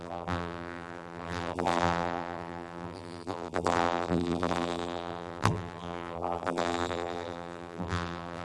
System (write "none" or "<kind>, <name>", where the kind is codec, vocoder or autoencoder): vocoder, BigVGAN v2